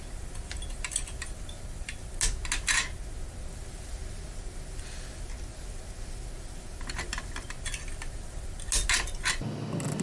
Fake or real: real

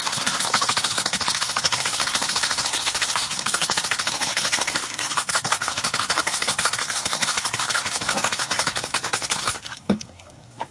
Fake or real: fake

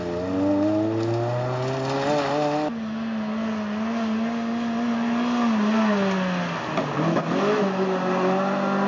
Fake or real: real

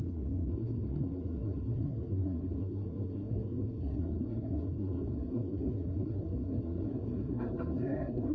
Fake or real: fake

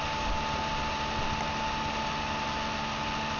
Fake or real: real